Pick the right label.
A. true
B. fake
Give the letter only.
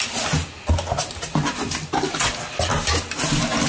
A